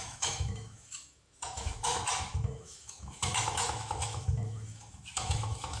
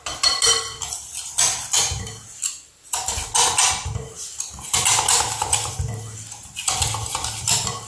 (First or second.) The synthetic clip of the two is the first